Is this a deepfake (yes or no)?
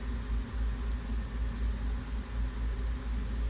no